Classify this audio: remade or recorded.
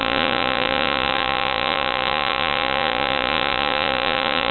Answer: remade